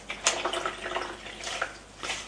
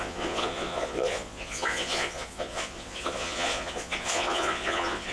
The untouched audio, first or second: first